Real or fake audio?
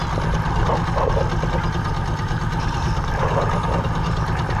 real